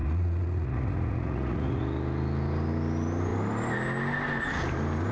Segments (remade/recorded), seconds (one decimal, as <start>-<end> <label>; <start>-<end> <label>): 0.0-1.8 remade; 1.8-5.1 recorded